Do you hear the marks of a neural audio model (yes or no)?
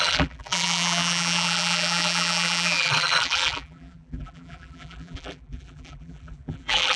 yes